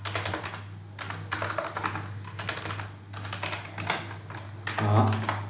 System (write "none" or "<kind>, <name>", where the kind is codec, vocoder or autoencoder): none